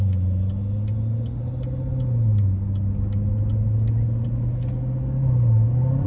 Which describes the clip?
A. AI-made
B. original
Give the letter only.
B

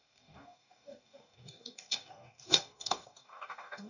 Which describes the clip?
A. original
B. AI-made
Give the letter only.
B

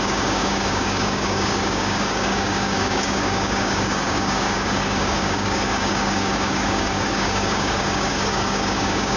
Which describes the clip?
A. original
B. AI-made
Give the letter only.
B